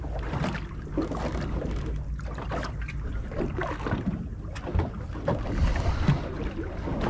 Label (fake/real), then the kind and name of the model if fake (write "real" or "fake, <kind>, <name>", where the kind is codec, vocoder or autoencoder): real